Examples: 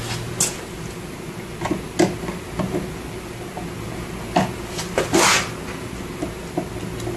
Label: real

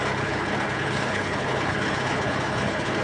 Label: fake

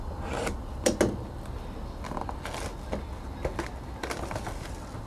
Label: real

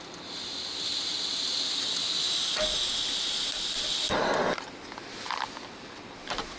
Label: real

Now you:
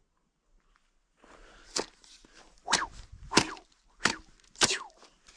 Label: real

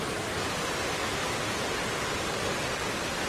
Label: real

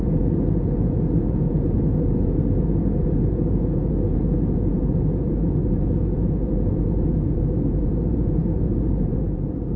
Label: fake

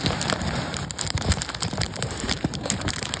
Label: fake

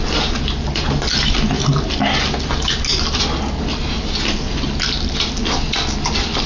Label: real